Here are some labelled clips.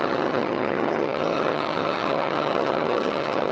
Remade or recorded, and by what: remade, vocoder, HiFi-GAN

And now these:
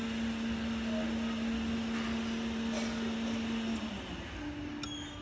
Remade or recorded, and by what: recorded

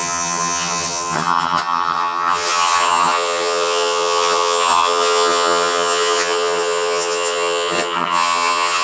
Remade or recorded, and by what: remade, vocoder, HiFi-GAN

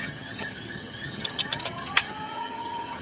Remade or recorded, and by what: remade, vocoder, HiFi-GAN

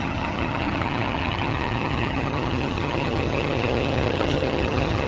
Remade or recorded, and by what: remade, vocoder, HiFi-GAN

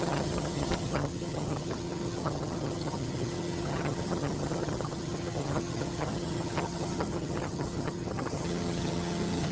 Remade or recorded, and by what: remade, vocoder, HiFi-GAN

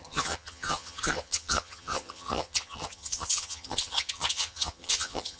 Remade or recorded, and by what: remade, vocoder, HiFi-GAN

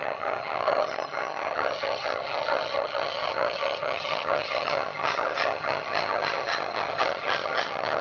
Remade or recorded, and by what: remade, vocoder, HiFi-GAN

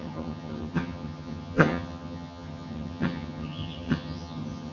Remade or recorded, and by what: remade, vocoder, HiFi-GAN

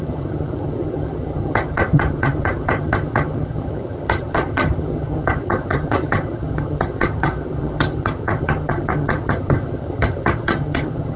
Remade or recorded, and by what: remade, vocoder, HiFi-GAN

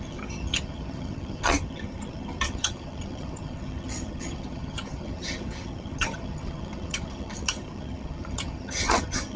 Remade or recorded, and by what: remade, vocoder, HiFi-GAN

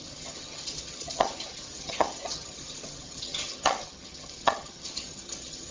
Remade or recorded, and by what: remade, vocoder, HiFi-GAN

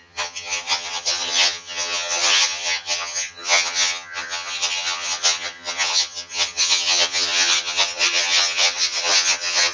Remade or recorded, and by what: remade, vocoder, HiFi-GAN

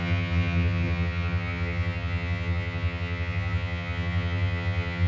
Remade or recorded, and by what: remade, vocoder, HiFi-GAN